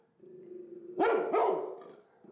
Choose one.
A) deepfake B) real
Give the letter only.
B